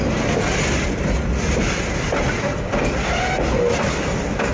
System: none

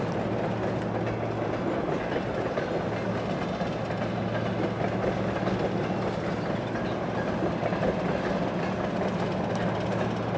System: none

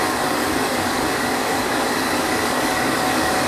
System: codec, DAC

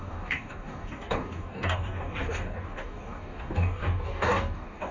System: codec, DAC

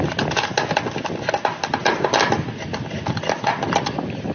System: none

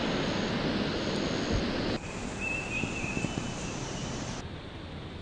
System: none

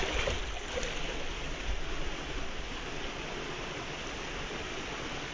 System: none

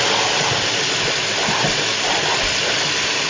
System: none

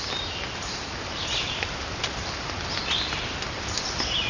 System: none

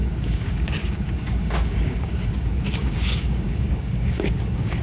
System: codec, DAC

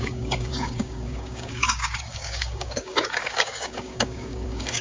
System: codec, DAC